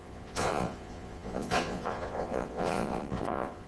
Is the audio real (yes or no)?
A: no